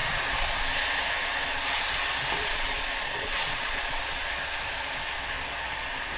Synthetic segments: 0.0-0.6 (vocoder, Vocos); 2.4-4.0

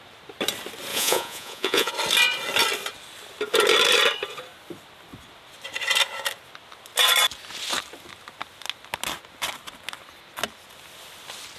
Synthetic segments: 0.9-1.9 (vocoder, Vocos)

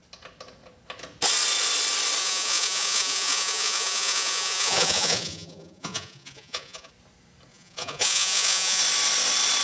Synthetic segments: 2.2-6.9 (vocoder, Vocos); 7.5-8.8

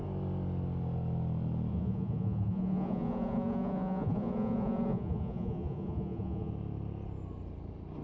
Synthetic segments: 1.7-6.5 (vocoder, Vocos)

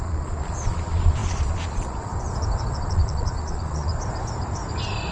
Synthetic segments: 0.0-2.1 (vocoder, Vocos); 2.8-3.9